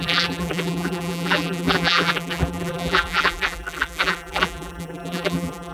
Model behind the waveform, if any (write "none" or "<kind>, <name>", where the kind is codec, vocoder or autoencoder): vocoder, BigVGAN v2